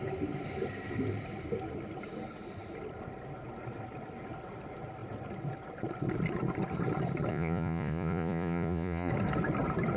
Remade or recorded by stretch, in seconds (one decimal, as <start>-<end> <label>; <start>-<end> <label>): 0.0-7.3 recorded; 7.3-9.1 remade; 9.1-10.0 recorded